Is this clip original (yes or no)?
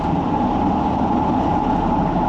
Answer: yes